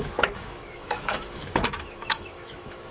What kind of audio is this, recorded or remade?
remade